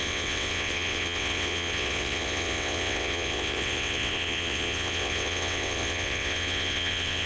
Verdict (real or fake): fake